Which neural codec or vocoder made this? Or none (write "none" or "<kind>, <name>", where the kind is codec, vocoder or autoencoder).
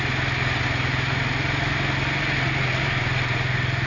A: none